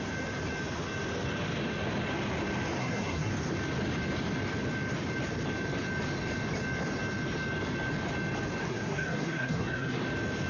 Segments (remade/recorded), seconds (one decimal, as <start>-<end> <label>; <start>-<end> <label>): 0.0-2.8 recorded; 2.8-3.3 remade; 3.3-8.6 recorded; 8.6-10.0 remade; 10.0-10.5 recorded